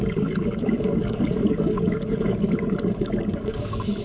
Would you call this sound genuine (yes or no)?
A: no